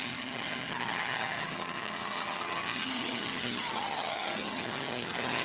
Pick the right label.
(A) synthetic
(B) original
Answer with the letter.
A